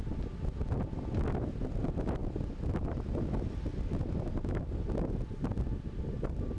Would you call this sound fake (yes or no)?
no